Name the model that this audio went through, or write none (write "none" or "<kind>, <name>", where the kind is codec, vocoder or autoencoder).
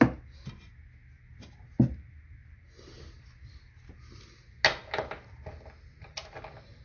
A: none